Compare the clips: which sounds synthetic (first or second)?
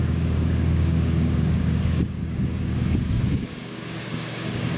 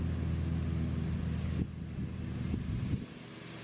first